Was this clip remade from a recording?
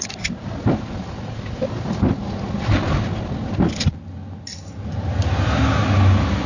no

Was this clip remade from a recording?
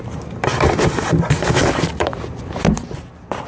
yes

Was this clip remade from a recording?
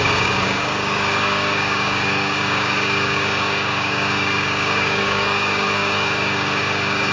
yes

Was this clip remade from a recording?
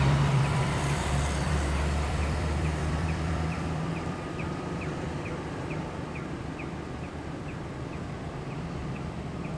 yes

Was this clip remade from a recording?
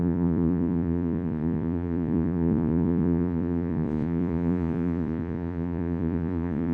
yes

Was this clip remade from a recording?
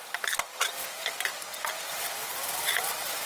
no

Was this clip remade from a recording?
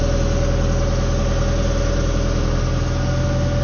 no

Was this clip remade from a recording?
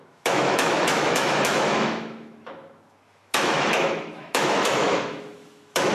yes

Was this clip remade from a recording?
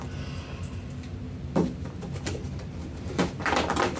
yes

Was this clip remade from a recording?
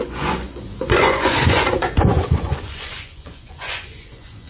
yes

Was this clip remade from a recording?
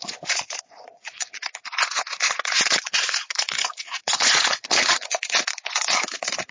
yes